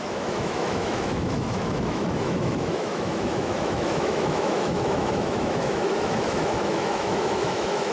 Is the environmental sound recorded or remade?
remade